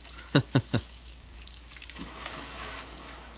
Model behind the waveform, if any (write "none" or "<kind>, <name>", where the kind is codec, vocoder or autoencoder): codec, DAC